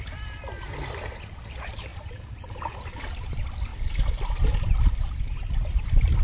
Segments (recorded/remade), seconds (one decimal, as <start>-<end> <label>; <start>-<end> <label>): 0.0-6.2 recorded